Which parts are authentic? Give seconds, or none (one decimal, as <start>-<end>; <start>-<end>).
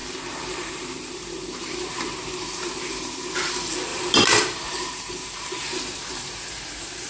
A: 3.3-3.9